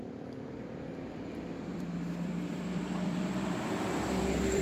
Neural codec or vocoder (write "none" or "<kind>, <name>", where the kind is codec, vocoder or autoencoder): vocoder, BigVGAN v2